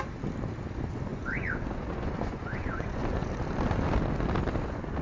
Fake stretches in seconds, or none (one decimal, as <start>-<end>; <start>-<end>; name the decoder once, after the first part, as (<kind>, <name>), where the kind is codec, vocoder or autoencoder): 1.1-3.3 (vocoder, Vocos)